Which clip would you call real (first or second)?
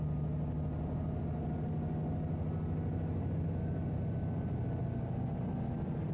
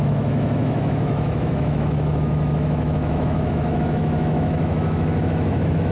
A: first